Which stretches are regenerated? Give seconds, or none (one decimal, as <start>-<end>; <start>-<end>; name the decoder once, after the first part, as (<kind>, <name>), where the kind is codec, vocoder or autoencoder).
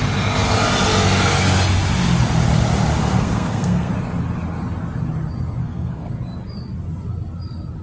3.0-3.9 (codec, SNAC); 5.6-6.1